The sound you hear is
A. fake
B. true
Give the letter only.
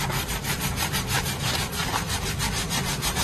A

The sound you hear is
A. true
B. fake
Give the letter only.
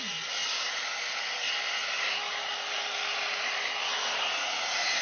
A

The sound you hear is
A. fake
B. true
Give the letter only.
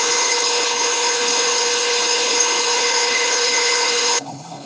A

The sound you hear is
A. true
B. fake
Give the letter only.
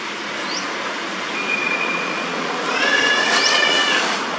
B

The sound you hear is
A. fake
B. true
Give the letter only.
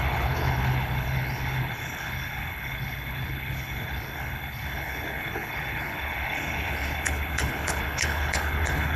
A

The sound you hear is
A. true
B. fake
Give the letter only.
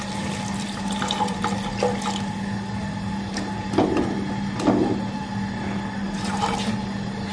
A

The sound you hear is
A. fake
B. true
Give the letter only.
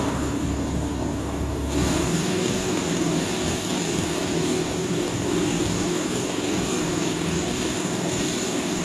A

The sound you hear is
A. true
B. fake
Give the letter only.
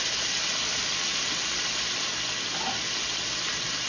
A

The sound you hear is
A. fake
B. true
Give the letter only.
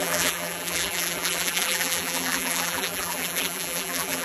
A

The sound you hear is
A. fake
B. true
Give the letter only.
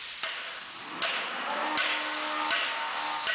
B